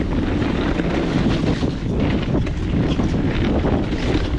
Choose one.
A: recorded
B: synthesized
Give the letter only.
A